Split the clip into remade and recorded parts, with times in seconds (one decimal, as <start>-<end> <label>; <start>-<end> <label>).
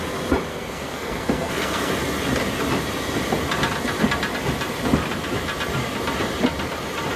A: 0.0-0.5 recorded; 0.5-1.9 remade; 1.9-7.2 recorded